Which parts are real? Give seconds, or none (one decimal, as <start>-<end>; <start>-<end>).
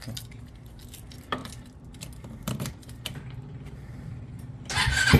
0.0-1.4; 4.4-5.2